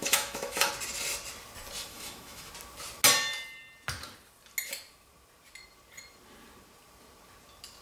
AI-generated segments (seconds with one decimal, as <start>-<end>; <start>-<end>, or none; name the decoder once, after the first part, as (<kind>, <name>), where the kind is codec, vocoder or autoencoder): 0.0-0.7 (autoencoder, DAC-VAE); 1.9-2.5